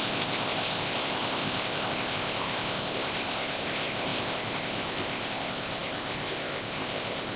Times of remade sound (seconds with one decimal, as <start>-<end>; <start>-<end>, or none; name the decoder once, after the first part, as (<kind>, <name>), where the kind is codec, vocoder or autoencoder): 0.0-7.4 (codec, ZipCodec)